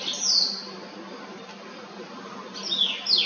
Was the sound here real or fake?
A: real